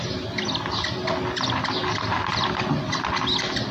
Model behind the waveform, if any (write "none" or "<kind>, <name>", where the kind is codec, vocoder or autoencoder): none